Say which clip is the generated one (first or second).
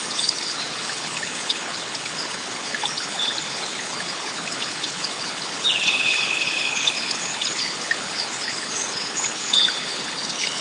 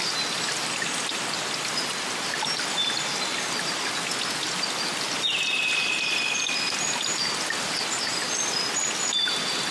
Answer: first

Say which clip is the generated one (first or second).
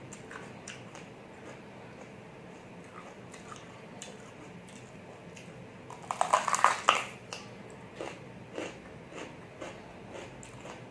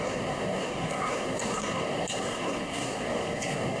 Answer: second